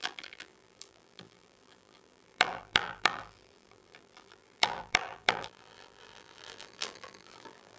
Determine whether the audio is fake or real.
fake